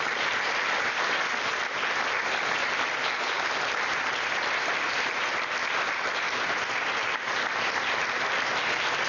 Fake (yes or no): no